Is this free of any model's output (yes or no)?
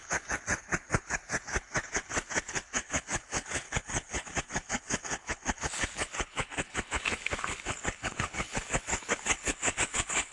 no